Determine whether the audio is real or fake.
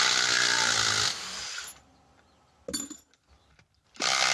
real